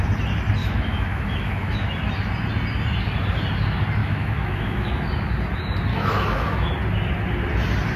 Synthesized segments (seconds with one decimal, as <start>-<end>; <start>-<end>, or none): 0.6-1.9; 4.0-5.1; 5.9-6.7